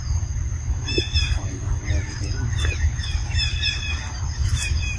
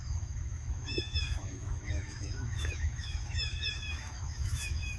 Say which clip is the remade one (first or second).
second